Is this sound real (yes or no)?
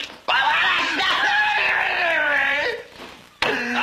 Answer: no